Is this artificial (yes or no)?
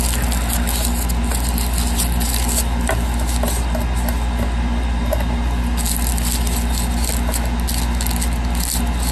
no